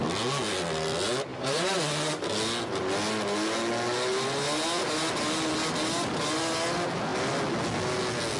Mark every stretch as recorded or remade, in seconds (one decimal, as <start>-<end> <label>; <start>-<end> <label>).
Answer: 0.0-1.3 recorded; 1.3-1.8 remade; 1.8-8.4 recorded

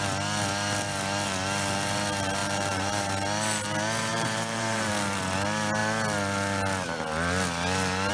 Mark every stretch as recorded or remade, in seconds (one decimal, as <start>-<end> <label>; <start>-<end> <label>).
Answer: 0.0-2.4 recorded; 2.4-3.1 remade; 3.1-4.1 recorded; 4.1-4.9 remade; 4.9-8.1 recorded

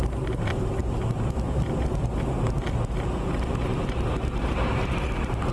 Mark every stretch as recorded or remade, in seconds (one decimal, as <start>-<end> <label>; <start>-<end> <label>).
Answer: 0.0-0.8 remade; 0.8-3.4 recorded; 3.4-5.5 remade

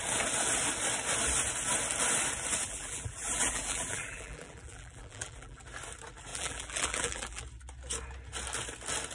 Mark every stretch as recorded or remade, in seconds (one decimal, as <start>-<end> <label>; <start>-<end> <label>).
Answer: 0.0-2.6 recorded; 2.6-5.6 remade; 5.6-6.3 recorded; 6.3-7.4 remade; 7.4-9.1 recorded